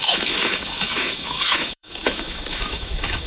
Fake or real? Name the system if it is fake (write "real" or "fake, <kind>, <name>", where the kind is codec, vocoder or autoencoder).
fake, autoencoder, DAC-VAE